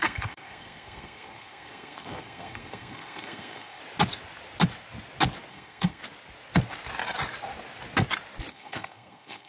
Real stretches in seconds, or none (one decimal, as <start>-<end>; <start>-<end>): 3.8-5.5; 6.0-8.5